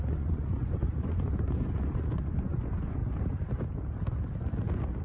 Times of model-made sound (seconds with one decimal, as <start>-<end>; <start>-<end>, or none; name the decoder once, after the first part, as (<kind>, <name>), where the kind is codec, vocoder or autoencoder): 0.0-3.0 (vocoder, Vocos)